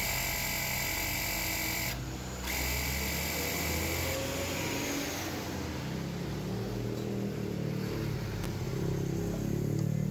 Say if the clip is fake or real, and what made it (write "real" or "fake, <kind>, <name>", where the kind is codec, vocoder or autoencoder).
real